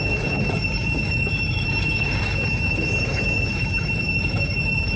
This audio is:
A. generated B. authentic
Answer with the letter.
A